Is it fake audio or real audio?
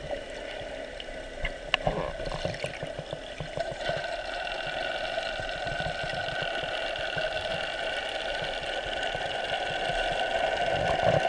real